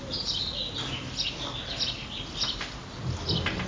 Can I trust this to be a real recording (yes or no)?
yes